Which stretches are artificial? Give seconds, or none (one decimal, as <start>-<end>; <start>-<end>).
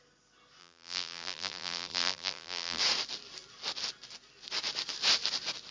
0.6-2.8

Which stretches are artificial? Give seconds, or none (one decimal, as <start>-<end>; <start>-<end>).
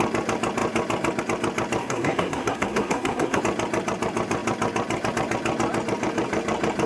1.8-3.4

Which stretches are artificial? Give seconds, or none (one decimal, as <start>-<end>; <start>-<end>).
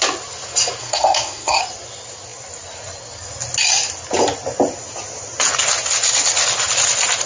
0.8-1.6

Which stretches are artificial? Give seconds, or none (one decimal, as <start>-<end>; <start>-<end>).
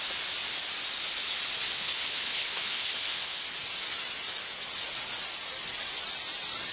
1.7-3.4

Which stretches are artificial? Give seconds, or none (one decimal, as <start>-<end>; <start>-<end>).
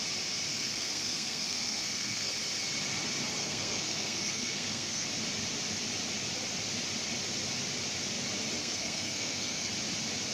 0.5-2.3; 3.4-5.1; 8.6-9.7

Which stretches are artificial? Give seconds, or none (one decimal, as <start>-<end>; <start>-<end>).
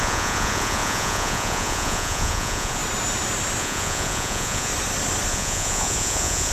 0.0-2.8; 3.6-4.7; 5.3-6.5